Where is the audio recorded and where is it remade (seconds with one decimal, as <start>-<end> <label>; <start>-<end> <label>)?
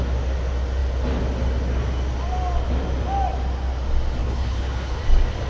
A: 0.0-4.2 recorded; 4.2-5.0 remade; 5.0-5.5 recorded